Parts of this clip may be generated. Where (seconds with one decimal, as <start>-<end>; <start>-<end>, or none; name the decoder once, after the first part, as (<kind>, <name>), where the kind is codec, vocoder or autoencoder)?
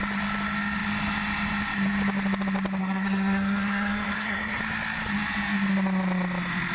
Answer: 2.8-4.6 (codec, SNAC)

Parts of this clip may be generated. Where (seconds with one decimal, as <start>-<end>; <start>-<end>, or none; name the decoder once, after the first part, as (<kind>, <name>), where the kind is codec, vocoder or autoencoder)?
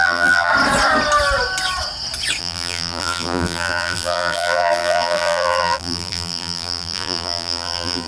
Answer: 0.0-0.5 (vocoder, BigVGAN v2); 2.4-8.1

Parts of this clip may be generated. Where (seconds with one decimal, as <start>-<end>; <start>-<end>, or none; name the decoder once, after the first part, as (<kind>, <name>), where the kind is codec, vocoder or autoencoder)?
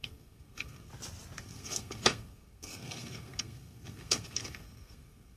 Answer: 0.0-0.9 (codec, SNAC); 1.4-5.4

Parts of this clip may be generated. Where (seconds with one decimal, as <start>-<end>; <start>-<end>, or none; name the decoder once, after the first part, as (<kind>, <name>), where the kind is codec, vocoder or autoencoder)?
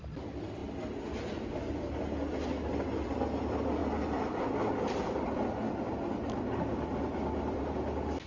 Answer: 3.8-7.6 (vocoder, BigVGAN v2)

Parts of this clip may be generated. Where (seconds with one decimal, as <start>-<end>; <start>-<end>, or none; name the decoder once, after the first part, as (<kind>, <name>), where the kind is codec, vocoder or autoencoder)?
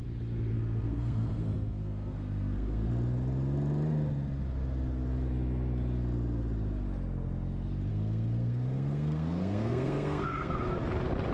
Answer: 0.5-2.9 (codec, SNAC); 7.9-10.6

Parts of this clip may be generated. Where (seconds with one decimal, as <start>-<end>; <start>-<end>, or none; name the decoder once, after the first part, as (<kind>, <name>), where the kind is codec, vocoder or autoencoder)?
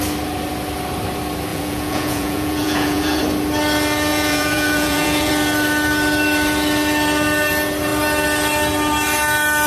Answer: 1.5-3.2 (vocoder, Vocos); 4.1-5.3